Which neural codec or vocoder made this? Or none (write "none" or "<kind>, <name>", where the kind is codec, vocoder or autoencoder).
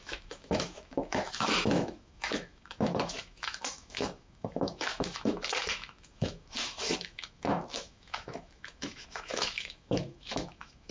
autoencoder, DAC-VAE